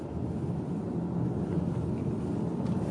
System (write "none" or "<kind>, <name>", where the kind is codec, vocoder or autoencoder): none